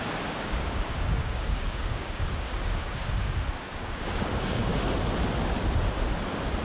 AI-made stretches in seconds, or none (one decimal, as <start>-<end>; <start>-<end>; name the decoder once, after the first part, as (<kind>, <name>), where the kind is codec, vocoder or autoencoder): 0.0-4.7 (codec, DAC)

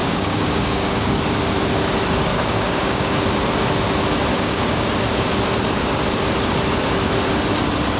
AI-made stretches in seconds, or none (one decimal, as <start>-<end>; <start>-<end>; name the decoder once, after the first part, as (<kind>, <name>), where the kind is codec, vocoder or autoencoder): 0.0-1.2 (codec, DAC); 2.3-3.1; 4.3-4.9

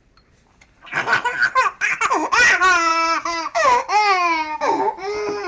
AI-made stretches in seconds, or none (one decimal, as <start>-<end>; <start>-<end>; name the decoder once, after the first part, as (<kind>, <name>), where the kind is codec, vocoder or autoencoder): 2.9-4.8 (codec, DAC)

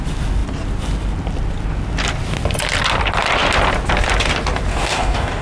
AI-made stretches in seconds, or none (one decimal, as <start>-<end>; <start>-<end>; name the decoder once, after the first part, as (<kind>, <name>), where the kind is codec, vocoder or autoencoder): 4.7-5.4 (codec, DAC)

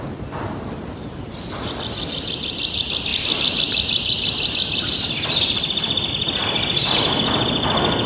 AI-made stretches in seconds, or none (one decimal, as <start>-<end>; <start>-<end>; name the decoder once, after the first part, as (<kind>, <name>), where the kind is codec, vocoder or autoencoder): none

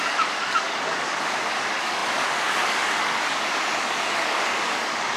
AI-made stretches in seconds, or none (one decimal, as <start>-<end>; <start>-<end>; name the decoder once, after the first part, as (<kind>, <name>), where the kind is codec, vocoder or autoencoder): 0.0-5.2 (codec, DAC)

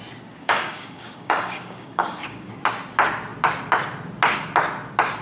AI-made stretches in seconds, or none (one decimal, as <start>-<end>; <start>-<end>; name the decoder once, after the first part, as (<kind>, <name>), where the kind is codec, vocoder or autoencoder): 0.4-2.5 (codec, DAC)